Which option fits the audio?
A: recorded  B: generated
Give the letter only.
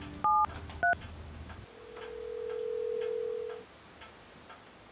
A